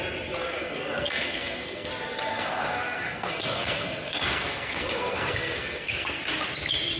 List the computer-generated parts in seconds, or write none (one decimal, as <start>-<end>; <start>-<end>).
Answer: 0.6-1.9; 2.3-6.2